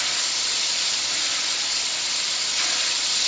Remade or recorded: recorded